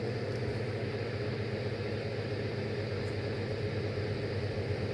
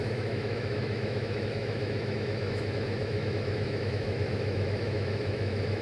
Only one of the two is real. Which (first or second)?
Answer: first